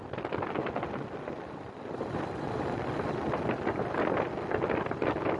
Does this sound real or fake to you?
real